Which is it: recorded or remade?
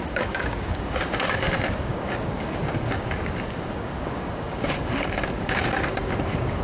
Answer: remade